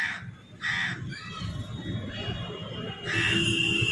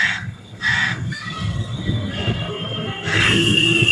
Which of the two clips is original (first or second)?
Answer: first